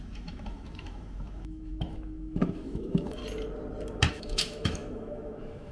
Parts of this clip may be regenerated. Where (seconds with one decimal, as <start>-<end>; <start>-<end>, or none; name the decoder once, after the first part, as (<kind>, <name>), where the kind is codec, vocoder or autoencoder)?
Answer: 0.0-3.2 (autoencoder, DAC-VAE); 4.1-5.7

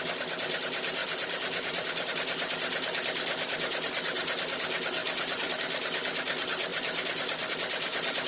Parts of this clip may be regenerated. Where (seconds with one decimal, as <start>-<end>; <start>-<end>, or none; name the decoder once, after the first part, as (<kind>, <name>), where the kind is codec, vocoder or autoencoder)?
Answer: 1.0-2.1 (vocoder, BigVGAN v2); 5.0-5.5; 6.7-7.5

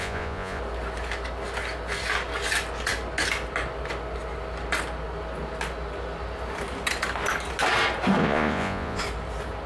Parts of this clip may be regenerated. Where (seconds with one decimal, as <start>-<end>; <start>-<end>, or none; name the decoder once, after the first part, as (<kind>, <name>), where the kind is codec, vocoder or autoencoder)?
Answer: 0.0-0.6 (vocoder, Vocos); 8.2-9.0

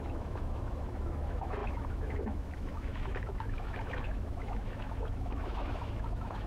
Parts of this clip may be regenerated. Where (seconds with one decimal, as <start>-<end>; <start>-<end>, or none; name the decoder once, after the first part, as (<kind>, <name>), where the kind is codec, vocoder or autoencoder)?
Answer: 0.0-6.5 (autoencoder, DAC-VAE)

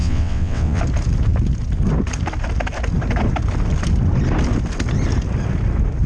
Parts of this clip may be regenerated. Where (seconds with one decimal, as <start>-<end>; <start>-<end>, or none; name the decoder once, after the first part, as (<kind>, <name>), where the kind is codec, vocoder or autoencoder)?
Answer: 0.0-0.8 (vocoder, WaveNeXt)

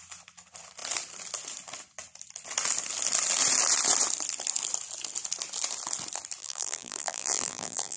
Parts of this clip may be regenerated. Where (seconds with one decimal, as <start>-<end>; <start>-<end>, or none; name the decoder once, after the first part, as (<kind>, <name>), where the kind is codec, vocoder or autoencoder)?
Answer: 6.4-8.0 (vocoder, BigVGAN v2)

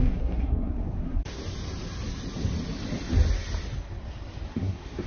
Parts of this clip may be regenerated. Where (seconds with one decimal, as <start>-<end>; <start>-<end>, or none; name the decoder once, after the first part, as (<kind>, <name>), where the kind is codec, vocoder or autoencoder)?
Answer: 0.0-1.4 (codec, SNAC); 4.5-5.1